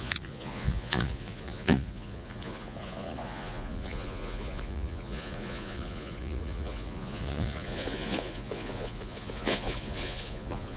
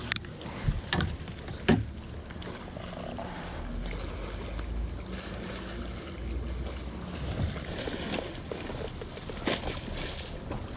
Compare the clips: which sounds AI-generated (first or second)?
first